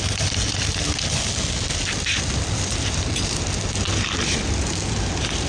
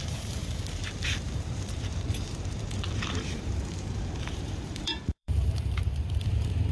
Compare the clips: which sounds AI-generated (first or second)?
second